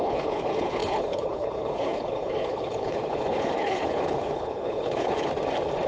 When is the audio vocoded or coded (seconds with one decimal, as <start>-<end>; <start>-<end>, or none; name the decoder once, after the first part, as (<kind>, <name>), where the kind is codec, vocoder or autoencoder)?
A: 0.0-5.3 (codec, HILCodec)